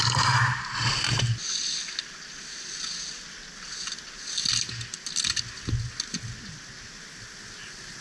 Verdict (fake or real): real